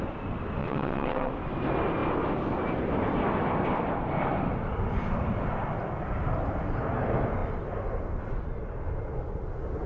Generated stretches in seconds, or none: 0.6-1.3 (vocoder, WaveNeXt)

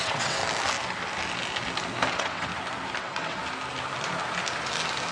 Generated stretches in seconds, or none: 0.0-0.4 (vocoder, WaveNeXt); 2.1-2.5; 3.0-3.4